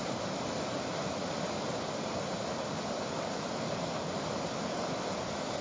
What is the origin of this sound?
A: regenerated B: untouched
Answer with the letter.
B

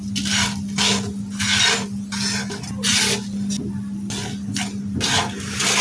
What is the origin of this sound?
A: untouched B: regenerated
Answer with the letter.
A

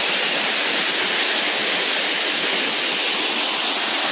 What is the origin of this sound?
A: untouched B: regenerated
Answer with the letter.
A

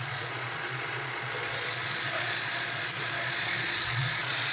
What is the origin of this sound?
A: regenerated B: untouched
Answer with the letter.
A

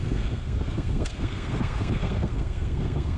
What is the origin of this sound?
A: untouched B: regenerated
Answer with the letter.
B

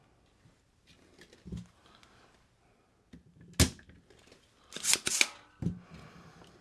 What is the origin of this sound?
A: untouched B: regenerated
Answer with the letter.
A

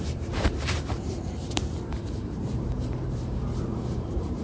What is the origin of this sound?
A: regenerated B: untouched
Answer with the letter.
A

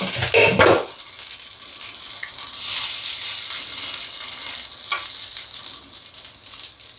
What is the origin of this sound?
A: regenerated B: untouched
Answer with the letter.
B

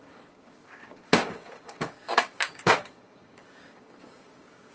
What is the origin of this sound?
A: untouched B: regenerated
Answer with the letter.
B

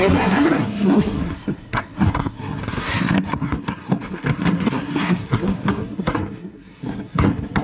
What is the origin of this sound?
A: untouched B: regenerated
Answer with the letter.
B